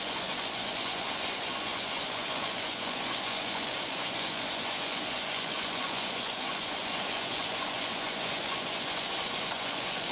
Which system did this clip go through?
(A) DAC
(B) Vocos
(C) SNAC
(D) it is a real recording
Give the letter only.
B